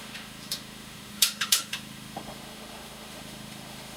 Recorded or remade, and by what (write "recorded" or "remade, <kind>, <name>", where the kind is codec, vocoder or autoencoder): remade, autoencoder, DAC-VAE